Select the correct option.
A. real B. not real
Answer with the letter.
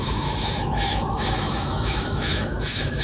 B